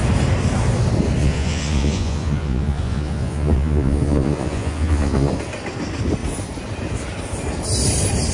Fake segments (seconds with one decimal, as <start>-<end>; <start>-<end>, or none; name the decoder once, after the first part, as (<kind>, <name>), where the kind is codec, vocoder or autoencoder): 1.2-5.3 (vocoder, Vocos)